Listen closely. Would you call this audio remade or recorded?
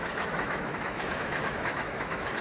remade